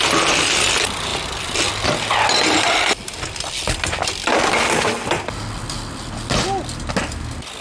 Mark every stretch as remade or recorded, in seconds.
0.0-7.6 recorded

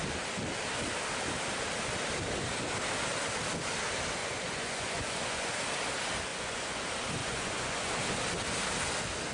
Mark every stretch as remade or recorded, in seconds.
0.0-4.2 recorded; 4.2-5.5 remade; 5.5-6.3 recorded; 6.3-6.8 remade; 6.8-7.2 recorded; 7.2-7.9 remade; 7.9-9.3 recorded